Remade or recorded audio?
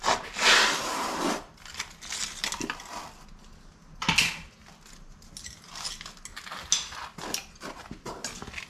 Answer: recorded